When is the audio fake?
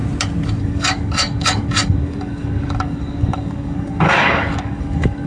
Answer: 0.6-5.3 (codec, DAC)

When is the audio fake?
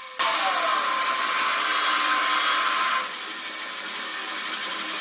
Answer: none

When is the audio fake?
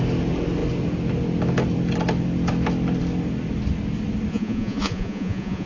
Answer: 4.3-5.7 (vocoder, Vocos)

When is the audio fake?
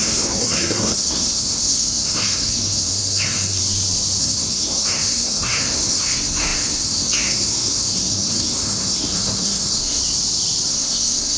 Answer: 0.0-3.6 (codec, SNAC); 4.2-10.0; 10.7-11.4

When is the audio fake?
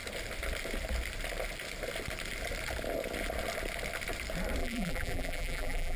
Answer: 4.6-6.0 (vocoder, BigVGAN v2)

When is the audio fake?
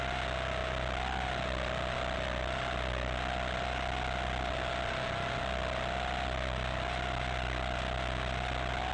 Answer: none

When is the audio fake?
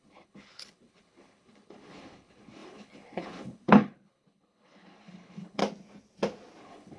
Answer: 0.0-5.6 (codec, HILCodec); 6.6-7.0